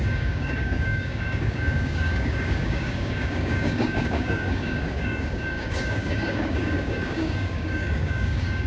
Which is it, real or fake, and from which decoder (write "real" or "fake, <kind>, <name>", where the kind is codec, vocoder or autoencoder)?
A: fake, codec, DAC